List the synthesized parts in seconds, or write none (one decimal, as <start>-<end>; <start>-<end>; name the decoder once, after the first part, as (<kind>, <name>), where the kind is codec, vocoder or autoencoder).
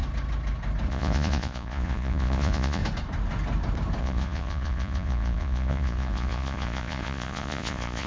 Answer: 0.9-2.8 (vocoder, Vocos); 4.0-8.1